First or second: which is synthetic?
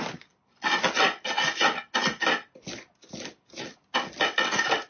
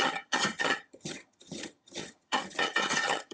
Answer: second